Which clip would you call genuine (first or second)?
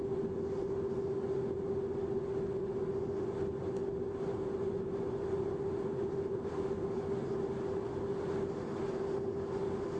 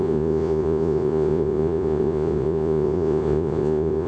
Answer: first